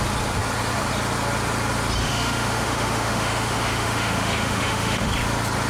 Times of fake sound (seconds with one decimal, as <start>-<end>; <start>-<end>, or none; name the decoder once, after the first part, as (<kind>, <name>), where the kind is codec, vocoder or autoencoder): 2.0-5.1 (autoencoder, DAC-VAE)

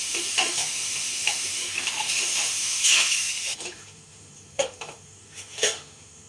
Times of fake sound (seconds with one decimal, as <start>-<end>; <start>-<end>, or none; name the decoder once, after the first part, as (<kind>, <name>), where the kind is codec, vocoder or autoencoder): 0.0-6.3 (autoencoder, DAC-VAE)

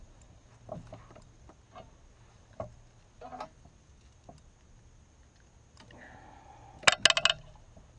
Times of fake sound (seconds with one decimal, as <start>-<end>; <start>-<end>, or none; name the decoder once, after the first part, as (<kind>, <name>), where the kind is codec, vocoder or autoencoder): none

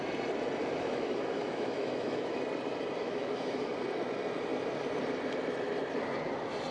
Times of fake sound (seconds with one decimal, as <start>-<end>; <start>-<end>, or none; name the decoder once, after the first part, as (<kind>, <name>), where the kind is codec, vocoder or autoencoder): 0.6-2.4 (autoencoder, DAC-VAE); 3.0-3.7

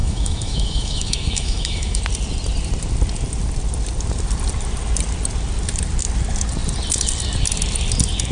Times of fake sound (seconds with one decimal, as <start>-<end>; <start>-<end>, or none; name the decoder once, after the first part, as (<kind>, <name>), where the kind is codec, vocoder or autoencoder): 0.0-2.0 (autoencoder, DAC-VAE)

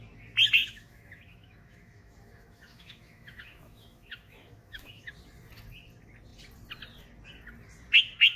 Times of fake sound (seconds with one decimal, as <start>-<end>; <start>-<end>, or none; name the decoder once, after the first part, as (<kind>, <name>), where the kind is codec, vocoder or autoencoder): 0.6-5.1 (autoencoder, DAC-VAE)

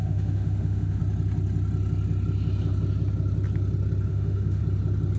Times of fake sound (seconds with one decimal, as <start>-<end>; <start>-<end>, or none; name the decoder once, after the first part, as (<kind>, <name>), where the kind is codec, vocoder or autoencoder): 0.0-1.0 (autoencoder, DAC-VAE); 4.1-4.6

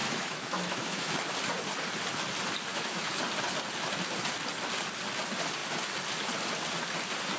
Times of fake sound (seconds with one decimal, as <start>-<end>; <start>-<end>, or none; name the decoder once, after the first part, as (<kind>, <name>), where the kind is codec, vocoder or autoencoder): 0.0-1.1 (autoencoder, DAC-VAE); 2.7-3.2